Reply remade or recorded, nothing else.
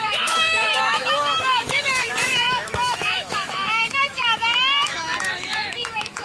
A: remade